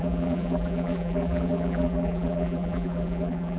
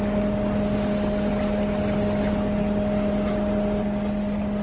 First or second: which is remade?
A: first